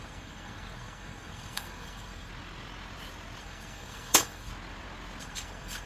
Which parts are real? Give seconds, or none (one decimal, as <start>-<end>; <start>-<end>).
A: 2.3-3.4; 4.5-5.2

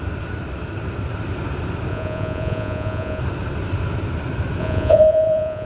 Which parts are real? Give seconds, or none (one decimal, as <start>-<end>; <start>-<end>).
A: 0.0-1.9; 3.2-4.6

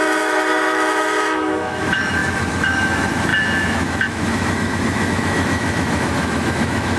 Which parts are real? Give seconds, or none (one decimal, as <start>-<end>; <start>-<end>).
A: none

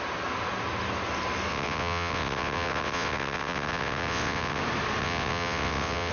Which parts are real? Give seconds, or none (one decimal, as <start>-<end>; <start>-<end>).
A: 0.0-1.5; 4.6-5.0